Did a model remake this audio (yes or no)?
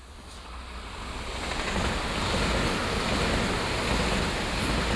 no